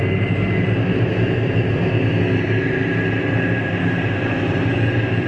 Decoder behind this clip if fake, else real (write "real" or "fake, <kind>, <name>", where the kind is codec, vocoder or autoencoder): real